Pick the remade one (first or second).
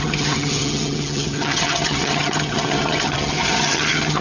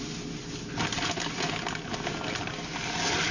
first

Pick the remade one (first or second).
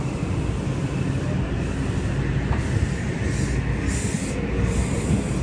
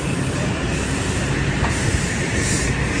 second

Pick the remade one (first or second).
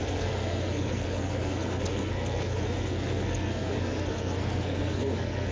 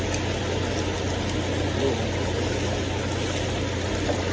first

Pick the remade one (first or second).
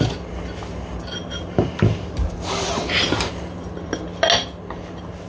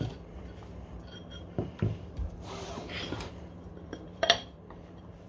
second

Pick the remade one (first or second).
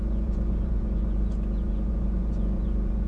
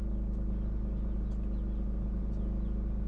first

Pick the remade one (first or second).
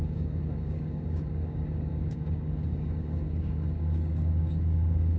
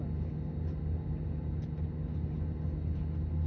first